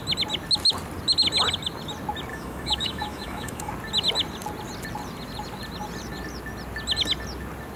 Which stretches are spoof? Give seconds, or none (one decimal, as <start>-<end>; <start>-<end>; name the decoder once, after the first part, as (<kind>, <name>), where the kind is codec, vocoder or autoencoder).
2.3-3.7 (autoencoder, DAC-VAE)